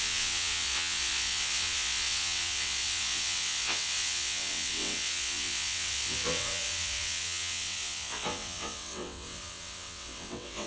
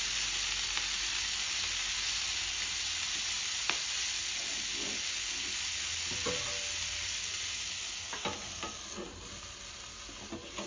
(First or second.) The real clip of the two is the second